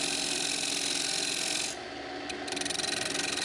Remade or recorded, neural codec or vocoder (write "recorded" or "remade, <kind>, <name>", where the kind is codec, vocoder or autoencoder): recorded